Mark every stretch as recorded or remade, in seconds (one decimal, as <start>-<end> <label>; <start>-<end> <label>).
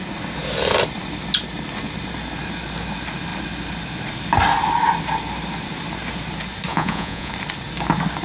0.0-6.7 recorded; 6.7-7.3 remade; 7.3-8.2 recorded